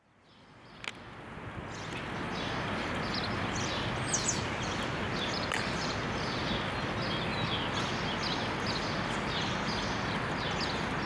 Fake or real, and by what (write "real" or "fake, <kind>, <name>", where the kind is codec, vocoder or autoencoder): real